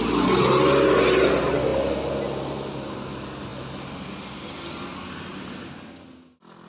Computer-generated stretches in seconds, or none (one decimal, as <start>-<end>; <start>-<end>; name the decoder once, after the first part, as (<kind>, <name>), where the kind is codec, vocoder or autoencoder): none